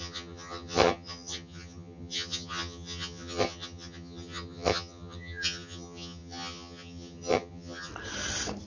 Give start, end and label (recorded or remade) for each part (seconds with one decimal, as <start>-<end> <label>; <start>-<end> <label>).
0.0-7.9 remade; 7.9-8.7 recorded